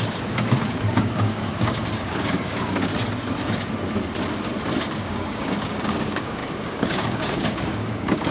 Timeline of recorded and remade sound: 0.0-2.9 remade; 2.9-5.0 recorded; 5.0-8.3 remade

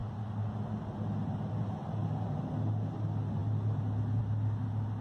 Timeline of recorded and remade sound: 0.0-5.0 recorded

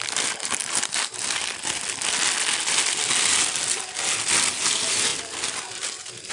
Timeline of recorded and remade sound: 0.0-6.3 recorded

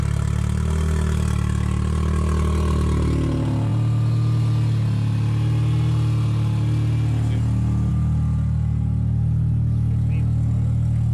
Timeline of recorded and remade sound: 0.0-11.1 recorded

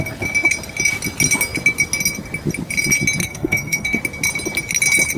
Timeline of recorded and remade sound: 0.0-3.2 recorded; 3.2-4.0 remade; 4.0-5.2 recorded

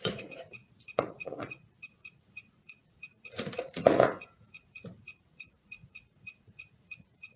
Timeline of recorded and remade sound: 0.0-7.4 remade

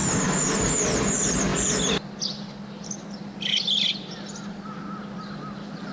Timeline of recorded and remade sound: 0.0-5.9 recorded

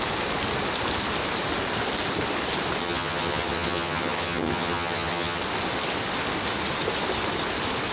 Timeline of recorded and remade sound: 0.0-2.8 recorded; 2.8-5.4 remade; 5.4-7.9 recorded